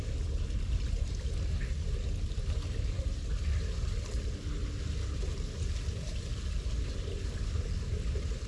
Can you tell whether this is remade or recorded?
recorded